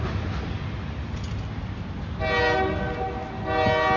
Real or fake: real